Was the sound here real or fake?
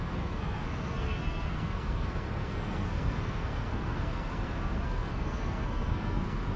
fake